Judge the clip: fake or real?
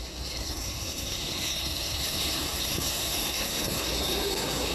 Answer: fake